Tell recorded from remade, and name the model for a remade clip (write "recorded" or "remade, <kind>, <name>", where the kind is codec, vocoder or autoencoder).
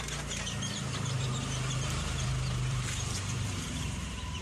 remade, vocoder, BigVGAN v2